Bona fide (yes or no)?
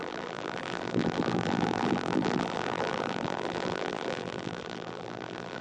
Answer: no